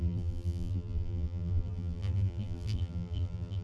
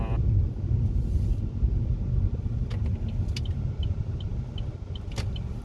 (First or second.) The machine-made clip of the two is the first